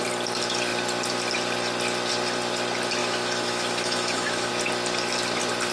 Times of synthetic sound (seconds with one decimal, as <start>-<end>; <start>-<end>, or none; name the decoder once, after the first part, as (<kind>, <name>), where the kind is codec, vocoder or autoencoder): 3.0-4.5 (autoencoder, DAC-VAE)